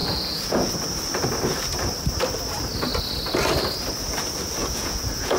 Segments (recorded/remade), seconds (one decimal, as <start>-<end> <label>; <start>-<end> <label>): 0.0-0.7 remade; 0.7-4.6 recorded; 4.6-5.4 remade